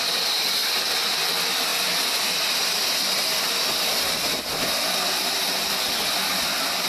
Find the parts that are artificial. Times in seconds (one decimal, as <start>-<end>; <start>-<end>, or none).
none

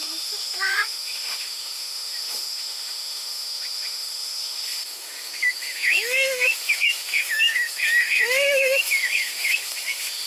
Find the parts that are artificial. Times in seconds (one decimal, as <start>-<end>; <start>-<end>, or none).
0.0-10.3